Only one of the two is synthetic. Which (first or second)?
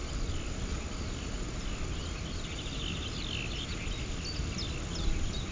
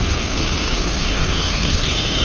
second